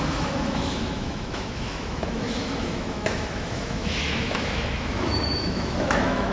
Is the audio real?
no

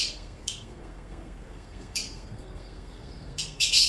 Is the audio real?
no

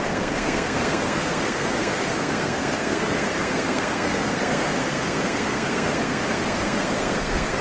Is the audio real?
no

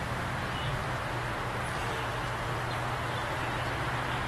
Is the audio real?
yes